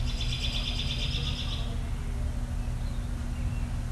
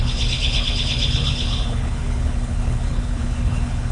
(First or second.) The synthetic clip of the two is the second